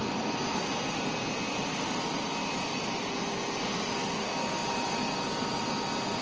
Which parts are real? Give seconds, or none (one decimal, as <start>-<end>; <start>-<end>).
0.0-6.2